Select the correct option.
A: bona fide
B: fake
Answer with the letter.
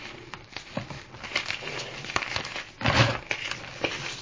A